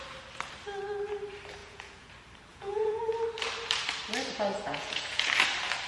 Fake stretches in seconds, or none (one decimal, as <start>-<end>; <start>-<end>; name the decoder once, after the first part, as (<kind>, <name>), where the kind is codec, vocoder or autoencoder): 1.6-2.1 (vocoder, Vocos); 2.5-3.0; 4.5-5.3